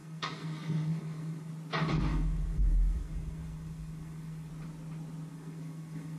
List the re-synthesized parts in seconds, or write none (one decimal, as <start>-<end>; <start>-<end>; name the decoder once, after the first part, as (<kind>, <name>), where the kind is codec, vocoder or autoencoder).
0.0-1.5 (codec, SNAC); 2.1-4.5; 5.3-6.2